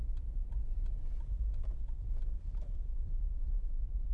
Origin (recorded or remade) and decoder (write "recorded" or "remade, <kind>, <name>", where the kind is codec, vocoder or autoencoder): remade, vocoder, BigVGAN v2